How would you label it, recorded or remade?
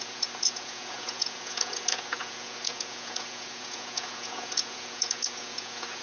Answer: remade